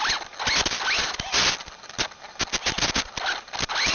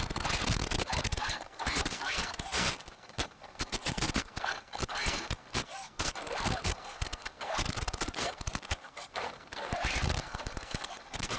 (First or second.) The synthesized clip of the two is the second